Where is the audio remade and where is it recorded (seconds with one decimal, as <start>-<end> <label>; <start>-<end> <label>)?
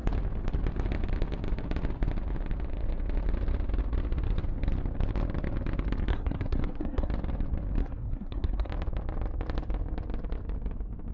0.0-6.1 recorded; 6.1-7.1 remade; 7.1-7.8 recorded; 7.8-8.7 remade; 8.7-11.1 recorded